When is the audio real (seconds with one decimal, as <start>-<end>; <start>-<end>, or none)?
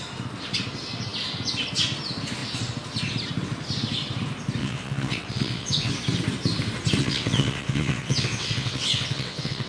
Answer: 0.0-4.6; 5.9-7.0